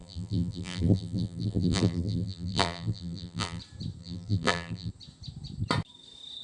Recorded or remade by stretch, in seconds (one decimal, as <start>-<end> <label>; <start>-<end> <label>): 0.0-3.6 remade; 3.6-4.0 recorded; 4.0-4.9 remade; 4.9-6.4 recorded